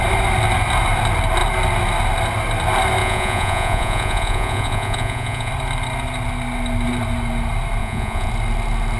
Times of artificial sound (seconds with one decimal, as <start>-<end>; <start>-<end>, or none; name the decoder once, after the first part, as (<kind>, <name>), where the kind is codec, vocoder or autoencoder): 3.0-5.5 (vocoder, Vocos); 7.8-8.3